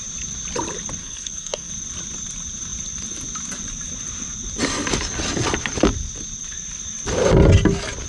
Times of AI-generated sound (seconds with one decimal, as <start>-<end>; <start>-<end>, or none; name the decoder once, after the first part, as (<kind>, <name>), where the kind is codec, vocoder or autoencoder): 1.0-1.7 (codec, SNAC)